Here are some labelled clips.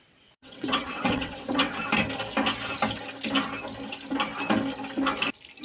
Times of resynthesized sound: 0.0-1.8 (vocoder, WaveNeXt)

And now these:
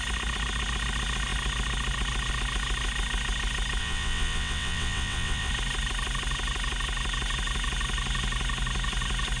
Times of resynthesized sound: 3.8-5.5 (vocoder, WaveNeXt)

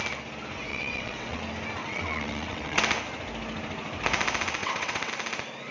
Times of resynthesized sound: 0.7-1.4 (vocoder, WaveNeXt); 1.8-2.8; 4.6-5.1